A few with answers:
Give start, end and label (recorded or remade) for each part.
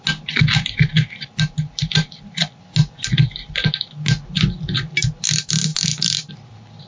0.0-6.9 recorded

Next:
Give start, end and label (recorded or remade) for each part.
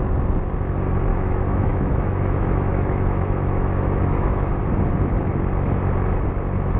0.0-1.1 recorded; 1.1-4.6 remade; 4.6-6.8 recorded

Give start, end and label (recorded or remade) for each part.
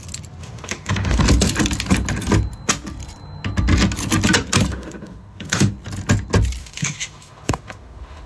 0.0-0.4 recorded; 0.4-1.2 remade; 1.2-4.7 recorded; 4.7-5.7 remade; 5.7-6.6 recorded; 6.6-8.3 remade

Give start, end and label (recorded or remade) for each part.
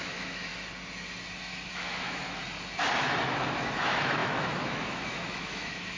0.0-0.5 remade; 0.5-1.7 recorded; 1.7-2.4 remade; 2.4-3.0 recorded; 3.0-6.0 remade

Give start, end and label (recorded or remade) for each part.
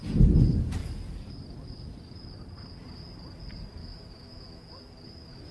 0.0-3.8 recorded; 3.8-4.7 remade; 4.7-5.5 recorded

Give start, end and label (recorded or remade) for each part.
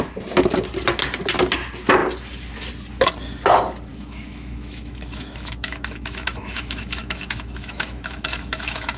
0.0-3.9 recorded; 3.9-9.0 remade